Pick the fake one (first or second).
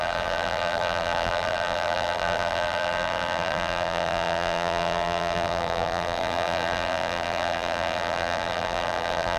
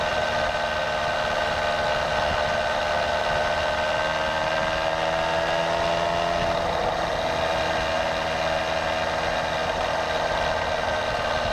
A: first